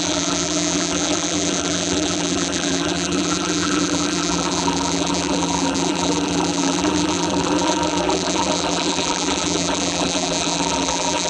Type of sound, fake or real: fake